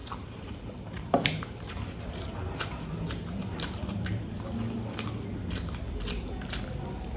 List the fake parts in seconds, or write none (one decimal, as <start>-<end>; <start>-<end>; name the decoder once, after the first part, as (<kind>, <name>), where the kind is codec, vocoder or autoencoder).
0.0-4.3 (vocoder, BigVGAN v2)